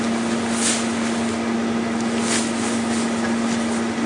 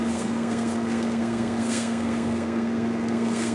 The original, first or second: first